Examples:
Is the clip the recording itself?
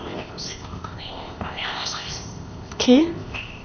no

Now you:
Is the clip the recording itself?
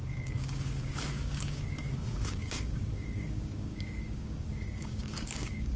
no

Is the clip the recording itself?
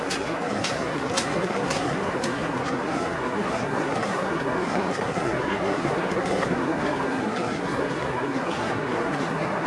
no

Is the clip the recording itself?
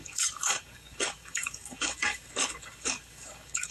no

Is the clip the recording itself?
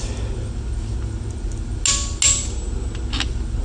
yes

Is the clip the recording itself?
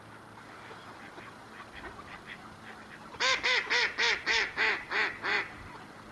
yes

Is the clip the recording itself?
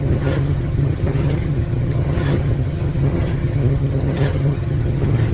no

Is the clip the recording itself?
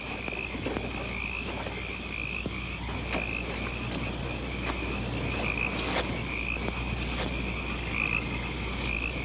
yes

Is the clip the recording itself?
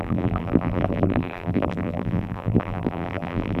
no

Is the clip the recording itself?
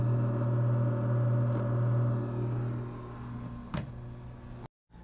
yes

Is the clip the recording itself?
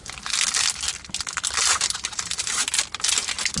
yes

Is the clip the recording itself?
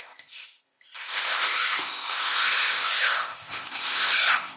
no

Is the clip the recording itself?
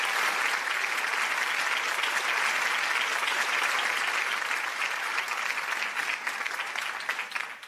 yes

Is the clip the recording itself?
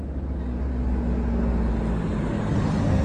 yes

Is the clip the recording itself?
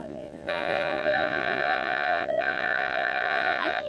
no